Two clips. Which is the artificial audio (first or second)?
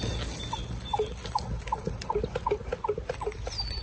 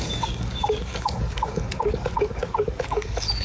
second